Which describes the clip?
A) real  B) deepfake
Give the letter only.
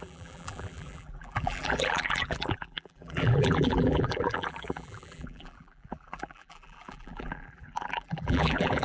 B